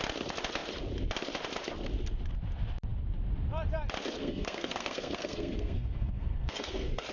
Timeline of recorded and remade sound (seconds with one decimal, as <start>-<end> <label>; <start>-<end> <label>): 0.0-4.2 recorded; 4.2-7.1 remade